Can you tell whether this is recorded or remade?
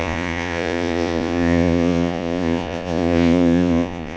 remade